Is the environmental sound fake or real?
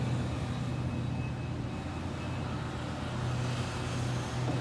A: real